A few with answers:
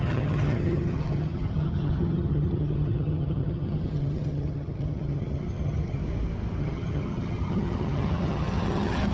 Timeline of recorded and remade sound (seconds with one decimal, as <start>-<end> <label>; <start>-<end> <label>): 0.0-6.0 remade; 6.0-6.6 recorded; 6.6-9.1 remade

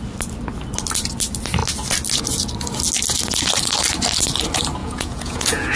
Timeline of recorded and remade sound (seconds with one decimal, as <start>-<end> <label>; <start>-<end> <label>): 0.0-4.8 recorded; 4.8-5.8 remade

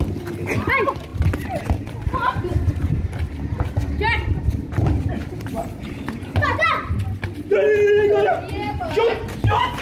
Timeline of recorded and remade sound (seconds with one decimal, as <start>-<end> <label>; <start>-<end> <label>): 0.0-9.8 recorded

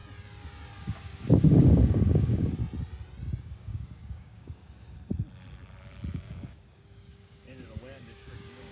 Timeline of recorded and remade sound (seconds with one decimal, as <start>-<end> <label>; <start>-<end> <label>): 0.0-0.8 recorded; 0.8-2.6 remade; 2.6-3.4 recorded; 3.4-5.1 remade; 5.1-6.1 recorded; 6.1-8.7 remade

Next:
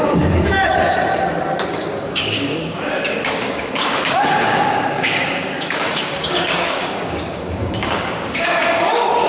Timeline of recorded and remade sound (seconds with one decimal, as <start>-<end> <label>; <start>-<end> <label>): 0.0-1.0 remade; 1.0-1.7 recorded; 1.7-9.3 remade